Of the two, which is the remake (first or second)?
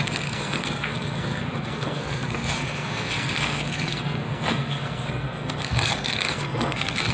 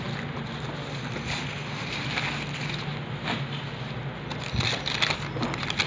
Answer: first